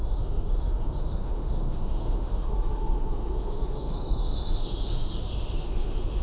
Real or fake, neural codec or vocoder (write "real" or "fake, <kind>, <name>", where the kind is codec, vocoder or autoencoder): fake, autoencoder, DAC-VAE